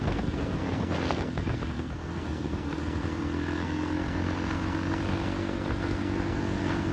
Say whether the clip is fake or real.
fake